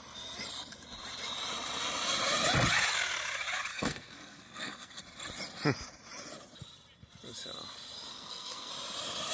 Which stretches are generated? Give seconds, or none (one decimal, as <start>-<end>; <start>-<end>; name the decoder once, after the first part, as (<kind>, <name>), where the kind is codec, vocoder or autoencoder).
3.7-5.0 (codec, SNAC); 8.1-8.7